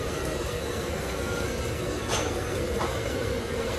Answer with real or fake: fake